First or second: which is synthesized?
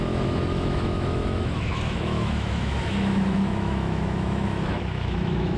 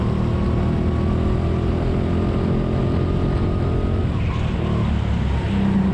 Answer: first